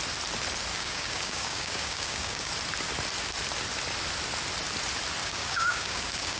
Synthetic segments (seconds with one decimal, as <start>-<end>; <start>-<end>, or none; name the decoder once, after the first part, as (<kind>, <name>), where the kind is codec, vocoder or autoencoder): 0.7-2.5 (codec, DAC); 5.2-6.4